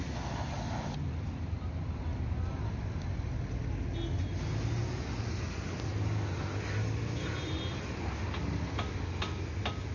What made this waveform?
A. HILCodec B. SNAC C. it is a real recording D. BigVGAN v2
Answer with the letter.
C